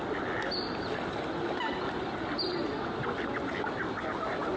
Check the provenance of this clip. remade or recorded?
recorded